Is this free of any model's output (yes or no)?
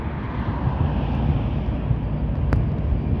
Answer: yes